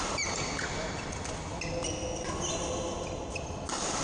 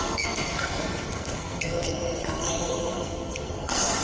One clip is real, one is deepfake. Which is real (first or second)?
first